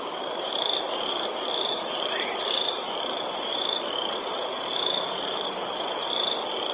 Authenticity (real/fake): fake